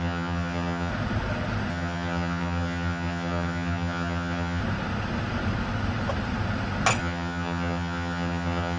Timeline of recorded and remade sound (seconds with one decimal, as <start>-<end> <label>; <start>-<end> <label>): 0.0-0.9 remade; 0.9-1.7 recorded; 1.7-4.6 remade; 4.6-7.0 recorded; 7.0-8.8 remade